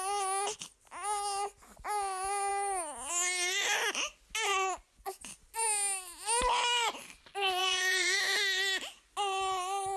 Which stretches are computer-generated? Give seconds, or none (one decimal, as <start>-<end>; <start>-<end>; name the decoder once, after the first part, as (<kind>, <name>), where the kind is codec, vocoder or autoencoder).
4.5-5.3 (vocoder, Vocos); 7.6-8.2